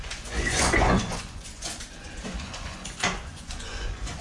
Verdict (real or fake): fake